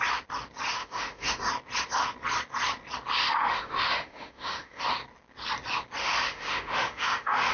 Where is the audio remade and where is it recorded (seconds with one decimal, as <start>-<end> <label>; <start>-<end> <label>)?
0.0-0.8 recorded; 0.8-1.5 remade; 1.5-3.2 recorded; 3.2-4.8 remade; 4.8-6.0 recorded; 6.0-7.5 remade